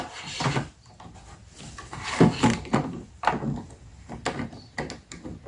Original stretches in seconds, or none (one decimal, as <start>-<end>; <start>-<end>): 0.0-5.5